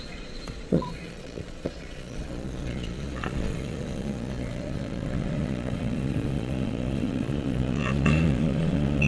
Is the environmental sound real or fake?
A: fake